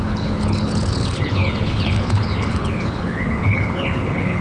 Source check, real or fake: fake